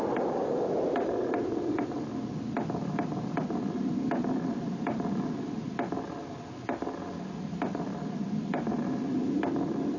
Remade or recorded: recorded